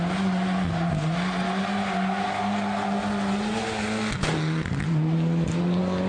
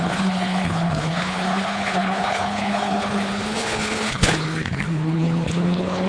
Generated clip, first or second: second